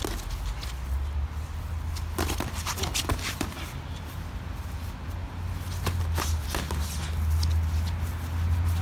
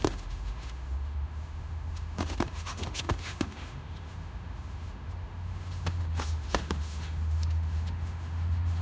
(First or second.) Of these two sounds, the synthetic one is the second